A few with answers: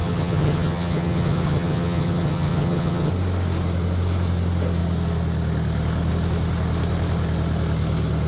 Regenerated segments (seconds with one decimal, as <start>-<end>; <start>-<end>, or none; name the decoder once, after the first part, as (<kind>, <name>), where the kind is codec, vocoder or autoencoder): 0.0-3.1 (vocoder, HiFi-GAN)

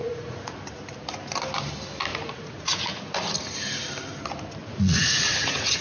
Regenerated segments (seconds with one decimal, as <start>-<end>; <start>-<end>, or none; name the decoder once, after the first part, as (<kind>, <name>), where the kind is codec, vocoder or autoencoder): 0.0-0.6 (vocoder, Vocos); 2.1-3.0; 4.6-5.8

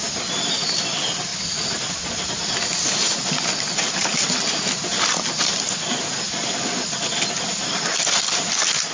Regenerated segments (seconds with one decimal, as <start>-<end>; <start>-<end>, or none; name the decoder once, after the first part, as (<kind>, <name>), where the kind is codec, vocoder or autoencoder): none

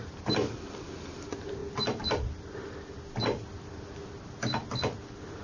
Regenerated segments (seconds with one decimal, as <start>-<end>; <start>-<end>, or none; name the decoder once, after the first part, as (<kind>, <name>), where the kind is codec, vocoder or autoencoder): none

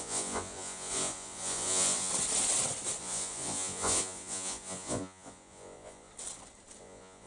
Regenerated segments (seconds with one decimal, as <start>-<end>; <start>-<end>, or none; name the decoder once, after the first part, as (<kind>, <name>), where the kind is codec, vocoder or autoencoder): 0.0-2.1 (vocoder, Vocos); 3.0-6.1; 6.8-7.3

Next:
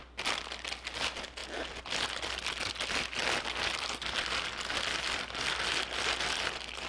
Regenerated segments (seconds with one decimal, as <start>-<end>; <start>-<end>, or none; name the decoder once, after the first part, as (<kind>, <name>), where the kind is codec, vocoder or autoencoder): none

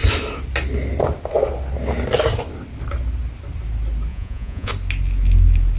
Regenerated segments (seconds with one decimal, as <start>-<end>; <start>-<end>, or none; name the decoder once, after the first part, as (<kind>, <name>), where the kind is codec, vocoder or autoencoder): 4.1-4.7 (vocoder, Vocos)

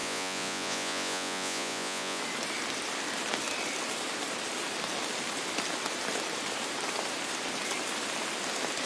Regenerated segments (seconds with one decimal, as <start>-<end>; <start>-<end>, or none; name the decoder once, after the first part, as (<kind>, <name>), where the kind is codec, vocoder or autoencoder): 0.0-2.2 (vocoder, Vocos)